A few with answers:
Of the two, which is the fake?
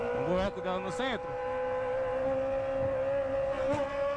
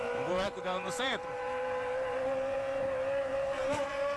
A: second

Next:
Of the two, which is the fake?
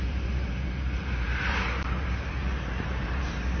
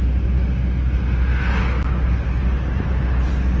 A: first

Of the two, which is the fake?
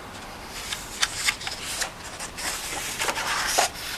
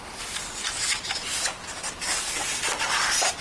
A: first